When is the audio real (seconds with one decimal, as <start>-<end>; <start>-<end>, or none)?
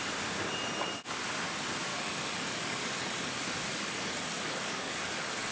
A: 0.0-1.9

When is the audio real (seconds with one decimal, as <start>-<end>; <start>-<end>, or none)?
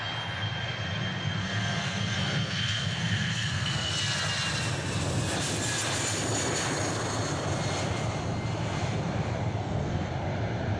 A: 0.0-1.4; 3.9-9.6; 10.1-10.8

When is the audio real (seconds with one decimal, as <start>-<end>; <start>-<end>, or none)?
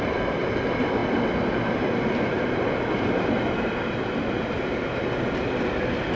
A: 0.0-6.2